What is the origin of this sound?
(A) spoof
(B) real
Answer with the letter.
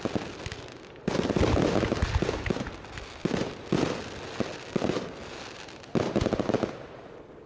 B